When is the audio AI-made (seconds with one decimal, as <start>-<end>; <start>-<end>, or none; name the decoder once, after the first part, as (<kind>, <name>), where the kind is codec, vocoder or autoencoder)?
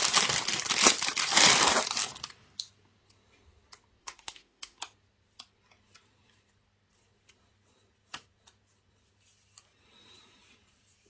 4.0-4.8 (autoencoder, DAC-VAE)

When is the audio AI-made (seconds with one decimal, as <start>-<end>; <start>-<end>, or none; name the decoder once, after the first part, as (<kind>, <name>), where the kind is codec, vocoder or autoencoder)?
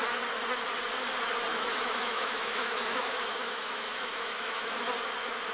1.5-4.8 (autoencoder, DAC-VAE)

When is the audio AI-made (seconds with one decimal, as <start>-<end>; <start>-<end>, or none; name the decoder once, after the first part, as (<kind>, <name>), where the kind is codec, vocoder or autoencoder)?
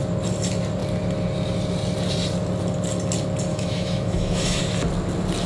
3.5-4.6 (autoencoder, DAC-VAE)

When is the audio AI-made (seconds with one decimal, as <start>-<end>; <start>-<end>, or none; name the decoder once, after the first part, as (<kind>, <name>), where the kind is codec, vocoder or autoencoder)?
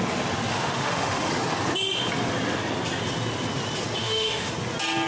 0.5-1.3 (autoencoder, DAC-VAE); 4.0-4.5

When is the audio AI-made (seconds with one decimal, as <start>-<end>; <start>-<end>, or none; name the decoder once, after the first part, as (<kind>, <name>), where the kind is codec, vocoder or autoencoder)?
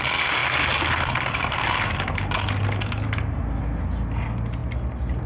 none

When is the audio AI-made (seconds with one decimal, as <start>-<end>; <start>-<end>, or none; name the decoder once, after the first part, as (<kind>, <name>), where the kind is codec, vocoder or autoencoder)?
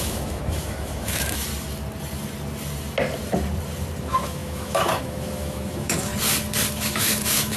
0.0-1.5 (autoencoder, DAC-VAE); 4.0-6.1; 6.7-7.6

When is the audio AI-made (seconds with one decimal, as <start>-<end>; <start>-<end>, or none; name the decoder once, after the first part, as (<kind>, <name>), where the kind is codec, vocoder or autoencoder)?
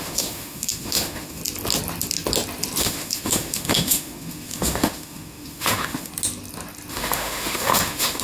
0.0-1.4 (autoencoder, DAC-VAE); 2.8-6.1; 6.9-8.2